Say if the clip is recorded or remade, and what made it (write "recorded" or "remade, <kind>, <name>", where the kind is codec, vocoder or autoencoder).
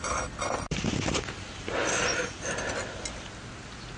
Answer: recorded